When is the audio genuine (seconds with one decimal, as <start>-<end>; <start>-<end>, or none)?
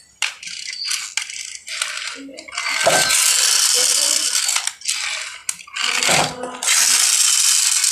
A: 0.0-7.9